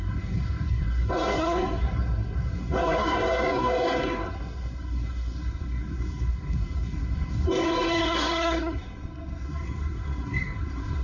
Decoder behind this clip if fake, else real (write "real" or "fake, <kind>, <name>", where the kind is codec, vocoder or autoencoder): fake, codec, SNAC